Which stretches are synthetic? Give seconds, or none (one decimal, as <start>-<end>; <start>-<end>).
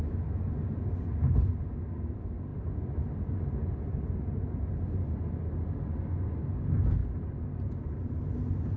none